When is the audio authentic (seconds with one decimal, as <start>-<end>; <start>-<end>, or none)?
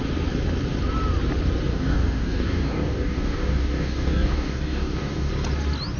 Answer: 0.0-1.7; 5.3-6.0